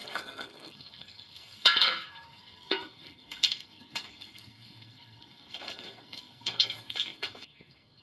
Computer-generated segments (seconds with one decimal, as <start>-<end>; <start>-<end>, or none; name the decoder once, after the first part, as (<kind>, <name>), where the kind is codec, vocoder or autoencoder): 0.0-8.0 (codec, SNAC)